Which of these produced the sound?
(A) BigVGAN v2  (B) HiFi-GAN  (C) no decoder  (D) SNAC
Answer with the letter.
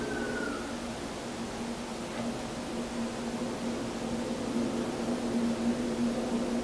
C